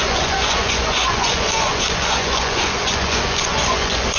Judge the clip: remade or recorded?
remade